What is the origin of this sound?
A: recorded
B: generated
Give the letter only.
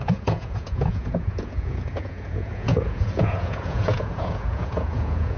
B